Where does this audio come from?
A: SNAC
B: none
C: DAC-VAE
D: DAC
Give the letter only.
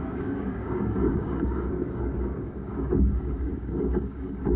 D